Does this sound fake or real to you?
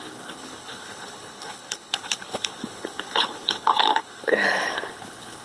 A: fake